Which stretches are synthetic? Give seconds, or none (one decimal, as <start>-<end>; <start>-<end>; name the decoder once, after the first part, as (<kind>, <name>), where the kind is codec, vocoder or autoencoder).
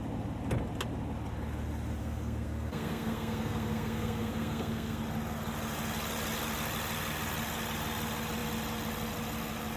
2.0-5.0 (codec, SNAC)